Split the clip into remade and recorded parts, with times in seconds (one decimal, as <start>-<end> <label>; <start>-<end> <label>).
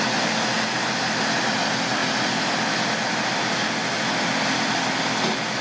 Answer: 0.0-5.6 recorded